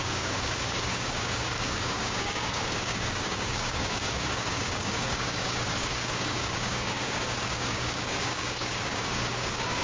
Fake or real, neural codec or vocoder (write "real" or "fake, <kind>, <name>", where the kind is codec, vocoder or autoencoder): fake, codec, DAC